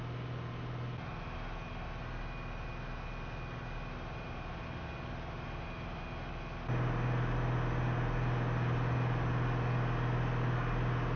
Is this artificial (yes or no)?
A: no